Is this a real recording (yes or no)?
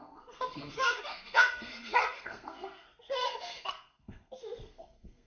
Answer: no